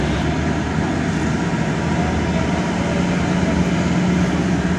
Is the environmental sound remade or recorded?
recorded